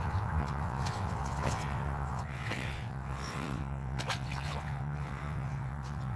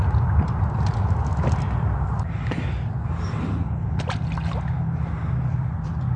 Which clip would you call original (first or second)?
second